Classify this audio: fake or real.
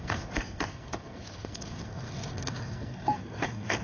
fake